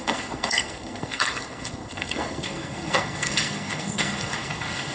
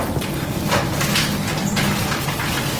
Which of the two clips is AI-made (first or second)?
first